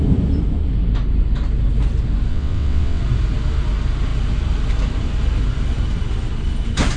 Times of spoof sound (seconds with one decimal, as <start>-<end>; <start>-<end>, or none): 2.3-3.0